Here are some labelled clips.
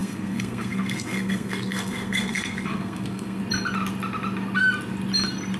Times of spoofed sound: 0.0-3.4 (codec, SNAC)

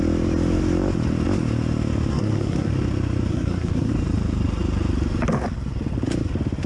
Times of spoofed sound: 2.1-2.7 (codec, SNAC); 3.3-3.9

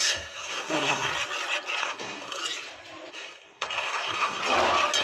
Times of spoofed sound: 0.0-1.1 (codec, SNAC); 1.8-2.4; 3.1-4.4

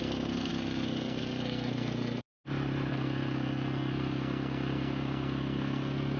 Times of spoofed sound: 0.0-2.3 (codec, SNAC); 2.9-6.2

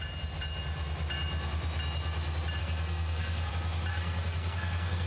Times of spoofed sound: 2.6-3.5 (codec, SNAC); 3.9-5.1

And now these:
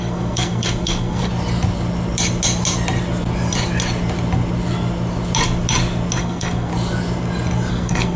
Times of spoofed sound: 0.0-1.3 (codec, SNAC); 6.2-6.7; 7.7-8.2

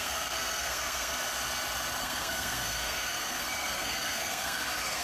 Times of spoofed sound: 0.0-1.1 (codec, SNAC); 2.0-5.0

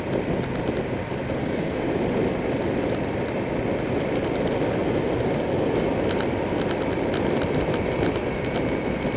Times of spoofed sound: 1.4-1.9 (codec, SNAC)